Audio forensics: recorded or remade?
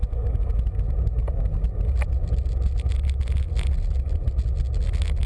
recorded